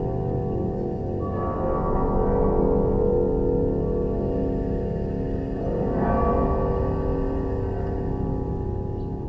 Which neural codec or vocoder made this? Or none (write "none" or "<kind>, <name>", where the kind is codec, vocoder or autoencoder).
none